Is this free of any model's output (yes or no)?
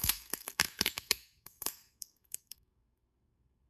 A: no